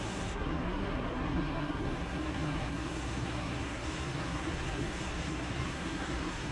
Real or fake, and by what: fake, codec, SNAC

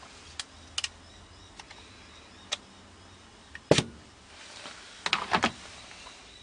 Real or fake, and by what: real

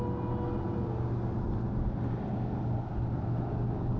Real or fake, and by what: real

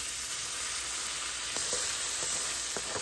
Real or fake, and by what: real